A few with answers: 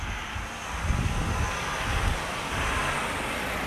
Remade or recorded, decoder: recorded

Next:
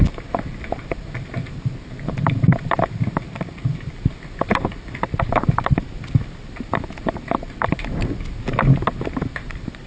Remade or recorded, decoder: recorded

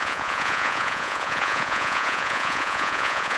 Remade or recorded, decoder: remade, vocoder, Vocos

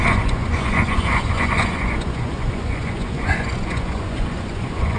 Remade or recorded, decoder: remade, vocoder, Vocos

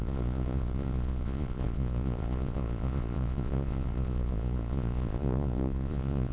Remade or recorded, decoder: remade, vocoder, Vocos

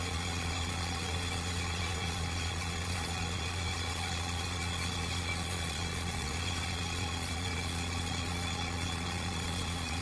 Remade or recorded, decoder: remade, vocoder, Vocos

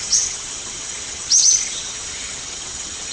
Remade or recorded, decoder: remade, vocoder, HiFi-GAN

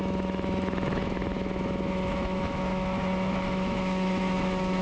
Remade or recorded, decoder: remade, autoencoder, DAC-VAE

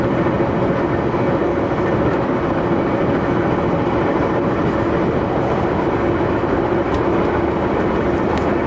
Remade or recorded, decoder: recorded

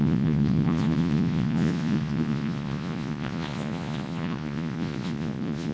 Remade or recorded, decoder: remade, vocoder, Vocos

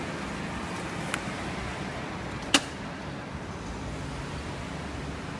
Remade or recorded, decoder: recorded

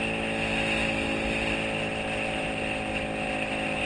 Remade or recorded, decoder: recorded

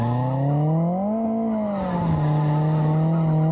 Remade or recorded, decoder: recorded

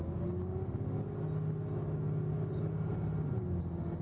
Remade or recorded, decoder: recorded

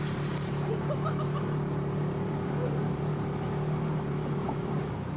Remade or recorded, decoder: recorded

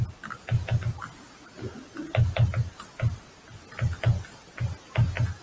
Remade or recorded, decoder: recorded